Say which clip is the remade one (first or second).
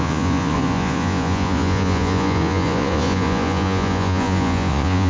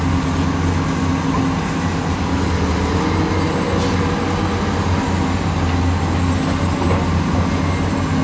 first